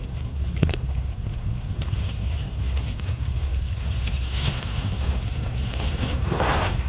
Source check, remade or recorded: remade